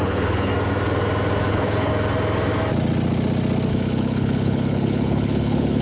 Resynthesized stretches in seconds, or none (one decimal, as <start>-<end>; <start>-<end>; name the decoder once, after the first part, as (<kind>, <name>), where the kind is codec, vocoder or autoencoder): 0.0-0.5 (codec, HILCodec); 1.5-1.9; 3.7-5.8